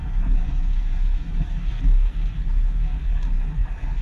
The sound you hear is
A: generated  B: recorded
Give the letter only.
A